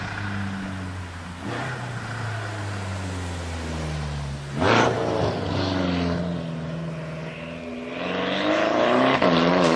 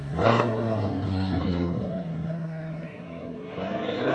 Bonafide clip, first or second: first